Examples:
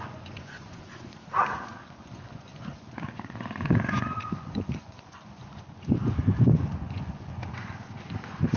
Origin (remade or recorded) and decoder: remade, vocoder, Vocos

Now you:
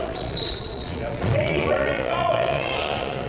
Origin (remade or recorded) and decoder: remade, vocoder, Vocos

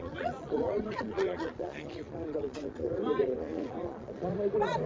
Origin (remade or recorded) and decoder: remade, vocoder, Vocos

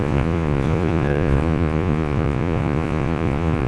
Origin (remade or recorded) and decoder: remade, vocoder, Vocos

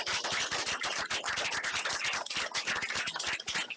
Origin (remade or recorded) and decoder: recorded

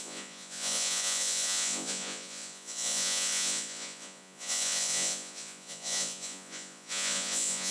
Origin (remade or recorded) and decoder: remade, vocoder, Vocos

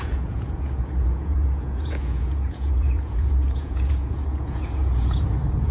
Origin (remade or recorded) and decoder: remade, vocoder, Vocos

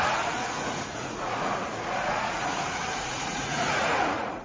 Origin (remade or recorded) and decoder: remade, vocoder, Vocos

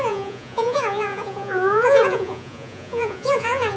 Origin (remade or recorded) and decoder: remade, vocoder, Vocos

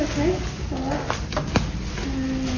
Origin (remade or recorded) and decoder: recorded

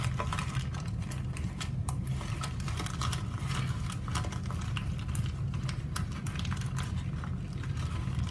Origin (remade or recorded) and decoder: recorded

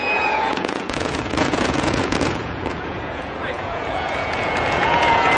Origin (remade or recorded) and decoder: remade, vocoder, Vocos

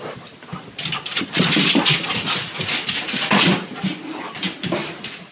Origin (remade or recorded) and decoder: recorded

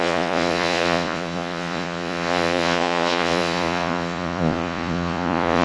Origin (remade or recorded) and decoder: remade, vocoder, Vocos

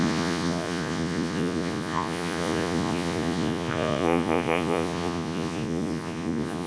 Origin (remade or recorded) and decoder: remade, vocoder, Vocos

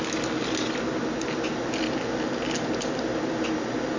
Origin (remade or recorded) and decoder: recorded